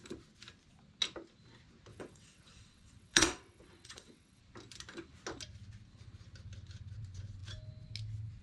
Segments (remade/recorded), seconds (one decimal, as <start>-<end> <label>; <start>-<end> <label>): 0.0-1.9 recorded; 1.9-4.4 remade; 4.4-8.4 recorded